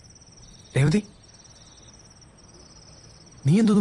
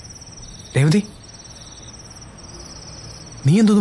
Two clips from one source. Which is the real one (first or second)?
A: second